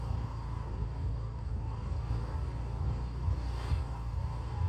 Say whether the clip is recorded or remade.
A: remade